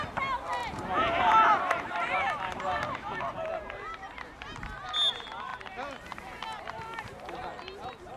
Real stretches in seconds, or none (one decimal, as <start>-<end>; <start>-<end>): 0.0-0.6; 2.9-8.2